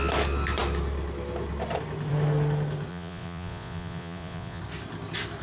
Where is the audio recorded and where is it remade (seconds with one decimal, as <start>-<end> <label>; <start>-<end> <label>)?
0.0-2.9 recorded; 2.9-4.6 remade; 4.6-5.4 recorded